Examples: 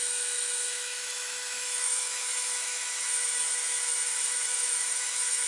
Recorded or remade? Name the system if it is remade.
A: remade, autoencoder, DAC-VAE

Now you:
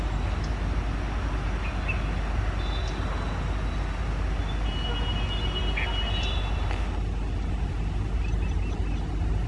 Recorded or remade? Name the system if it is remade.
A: recorded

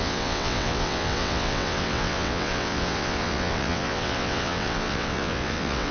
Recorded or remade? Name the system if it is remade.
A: remade, vocoder, WaveNeXt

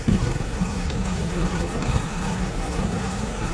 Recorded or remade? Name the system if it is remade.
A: remade, codec, SNAC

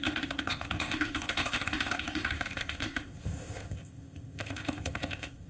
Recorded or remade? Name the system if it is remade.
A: remade, codec, ZipCodec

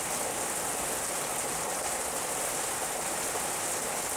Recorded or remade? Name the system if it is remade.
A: recorded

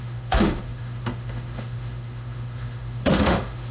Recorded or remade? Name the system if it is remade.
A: remade, autoencoder, DAC-VAE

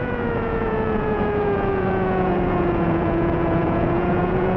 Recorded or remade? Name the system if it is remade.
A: remade, vocoder, Vocos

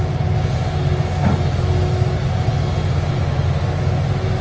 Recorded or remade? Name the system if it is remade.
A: recorded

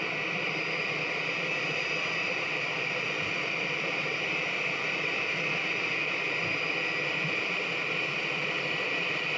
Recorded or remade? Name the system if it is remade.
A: remade, vocoder, BigVGAN v2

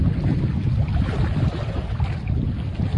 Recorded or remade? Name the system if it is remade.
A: recorded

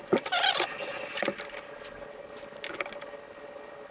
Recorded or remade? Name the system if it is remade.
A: recorded